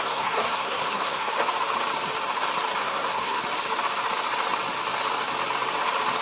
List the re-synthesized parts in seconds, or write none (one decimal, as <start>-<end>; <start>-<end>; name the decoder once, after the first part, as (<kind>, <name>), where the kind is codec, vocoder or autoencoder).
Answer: 0.0-1.3 (codec, SNAC); 2.8-3.4

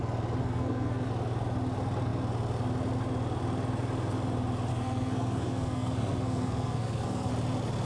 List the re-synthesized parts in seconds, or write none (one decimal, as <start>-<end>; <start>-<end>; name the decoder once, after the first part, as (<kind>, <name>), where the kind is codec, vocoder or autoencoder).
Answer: 0.4-1.1 (codec, SNAC); 4.7-7.3

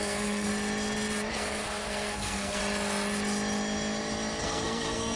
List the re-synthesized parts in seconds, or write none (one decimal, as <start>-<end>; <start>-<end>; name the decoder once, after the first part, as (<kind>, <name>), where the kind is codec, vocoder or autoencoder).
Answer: 0.0-0.5 (codec, SNAC); 1.3-2.6; 4.4-5.2

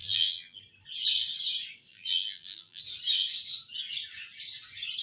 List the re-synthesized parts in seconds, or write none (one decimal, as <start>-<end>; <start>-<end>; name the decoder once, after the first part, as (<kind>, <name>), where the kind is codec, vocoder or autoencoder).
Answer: 0.0-0.6 (vocoder, BigVGAN v2); 1.9-2.8

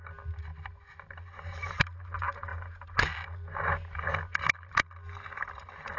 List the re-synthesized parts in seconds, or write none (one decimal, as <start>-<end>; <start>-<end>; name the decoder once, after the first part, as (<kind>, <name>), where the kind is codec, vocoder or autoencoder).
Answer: none

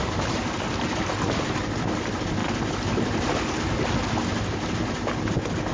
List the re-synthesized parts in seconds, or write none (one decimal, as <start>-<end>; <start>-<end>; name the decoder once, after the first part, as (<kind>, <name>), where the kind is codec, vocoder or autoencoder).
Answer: none

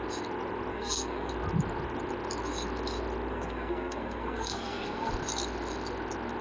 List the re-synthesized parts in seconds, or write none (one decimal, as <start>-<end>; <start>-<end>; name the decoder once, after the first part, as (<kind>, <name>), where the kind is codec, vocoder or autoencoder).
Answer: 0.7-1.3 (codec, SNAC); 3.3-5.1

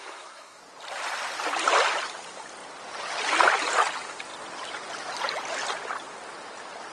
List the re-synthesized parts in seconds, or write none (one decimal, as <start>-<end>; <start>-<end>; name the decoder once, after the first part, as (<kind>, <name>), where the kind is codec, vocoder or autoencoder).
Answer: 0.0-0.6 (codec, SNAC)